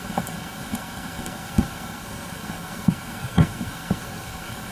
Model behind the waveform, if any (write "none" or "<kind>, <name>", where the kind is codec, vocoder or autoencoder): codec, SNAC